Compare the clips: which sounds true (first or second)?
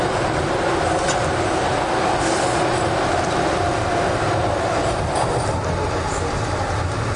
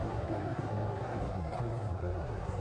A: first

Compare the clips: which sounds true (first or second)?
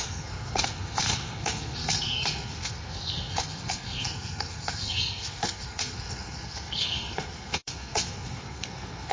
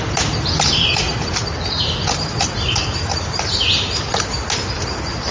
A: second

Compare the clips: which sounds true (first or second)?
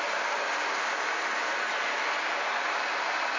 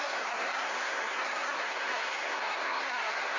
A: first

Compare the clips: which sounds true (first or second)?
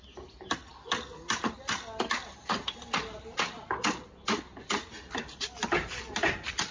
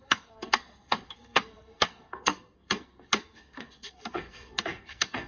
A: first